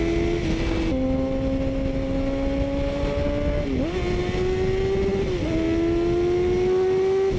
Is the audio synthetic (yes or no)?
no